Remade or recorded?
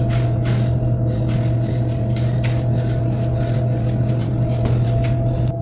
recorded